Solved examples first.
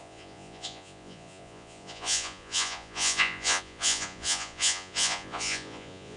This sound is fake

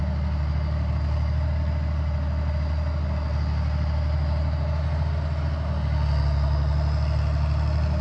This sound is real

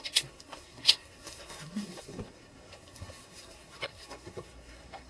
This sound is fake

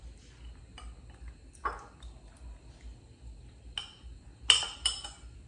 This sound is real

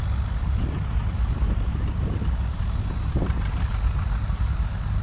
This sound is real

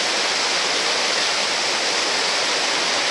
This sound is real